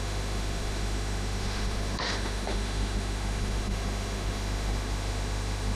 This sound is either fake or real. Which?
fake